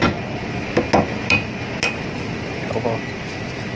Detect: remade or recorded recorded